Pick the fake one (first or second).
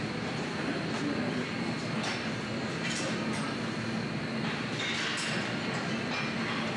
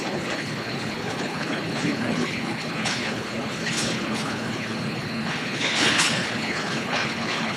second